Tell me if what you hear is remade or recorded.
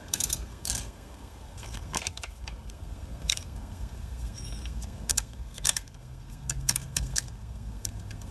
remade